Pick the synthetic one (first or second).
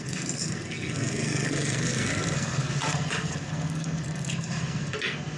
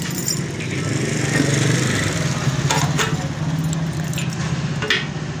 first